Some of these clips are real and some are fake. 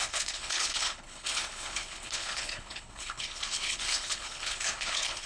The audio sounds fake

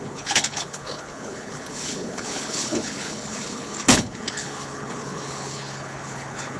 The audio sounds fake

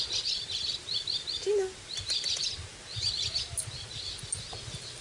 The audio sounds real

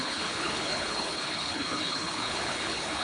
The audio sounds fake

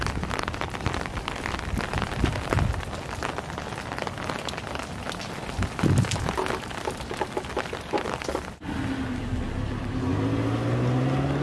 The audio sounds real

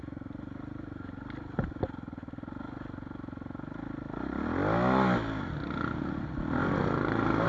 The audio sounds real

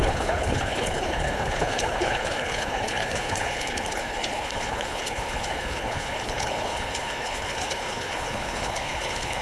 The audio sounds fake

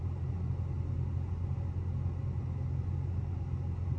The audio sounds real